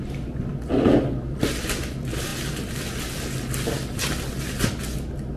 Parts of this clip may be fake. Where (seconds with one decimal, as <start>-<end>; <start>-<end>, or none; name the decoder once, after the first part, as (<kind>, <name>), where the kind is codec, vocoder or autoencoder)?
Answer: none